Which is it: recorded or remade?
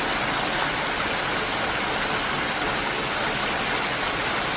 recorded